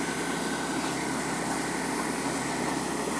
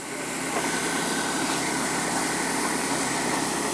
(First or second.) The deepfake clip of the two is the second